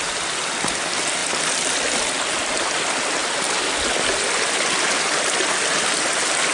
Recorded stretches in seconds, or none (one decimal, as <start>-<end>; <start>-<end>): 0.0-6.5